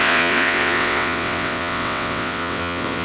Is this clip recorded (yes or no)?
no